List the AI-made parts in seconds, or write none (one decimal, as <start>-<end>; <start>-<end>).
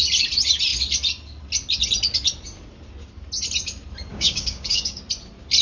4.1-5.0